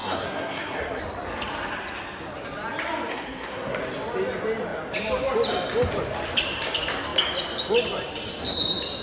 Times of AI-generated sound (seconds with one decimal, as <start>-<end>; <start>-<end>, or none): 0.0-1.0; 3.1-3.8